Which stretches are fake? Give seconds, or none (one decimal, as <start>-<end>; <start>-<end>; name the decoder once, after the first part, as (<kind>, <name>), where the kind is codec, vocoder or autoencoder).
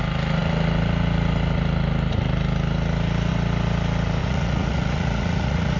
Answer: 4.2-5.8 (vocoder, Vocos)